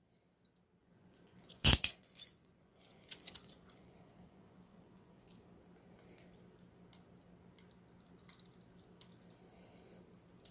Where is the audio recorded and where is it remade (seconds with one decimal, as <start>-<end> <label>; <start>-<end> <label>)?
0.0-0.8 recorded; 0.8-5.3 remade; 5.3-10.5 recorded